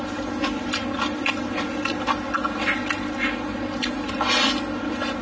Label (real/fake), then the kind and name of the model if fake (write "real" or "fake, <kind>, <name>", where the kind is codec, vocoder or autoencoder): real